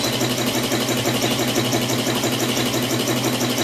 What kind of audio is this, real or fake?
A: real